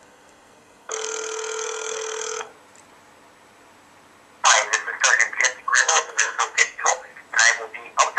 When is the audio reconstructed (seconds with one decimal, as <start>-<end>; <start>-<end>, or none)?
0.0-2.5; 5.6-7.1